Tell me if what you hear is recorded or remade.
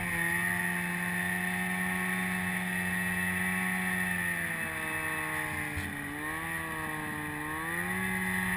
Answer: recorded